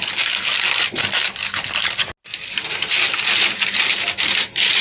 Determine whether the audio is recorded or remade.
recorded